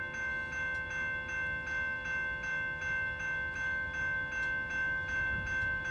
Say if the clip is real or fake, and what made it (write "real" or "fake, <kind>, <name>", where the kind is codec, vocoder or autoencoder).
real